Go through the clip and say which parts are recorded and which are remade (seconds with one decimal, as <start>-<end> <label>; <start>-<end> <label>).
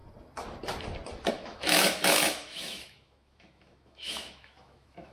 0.0-1.3 recorded; 1.3-5.1 remade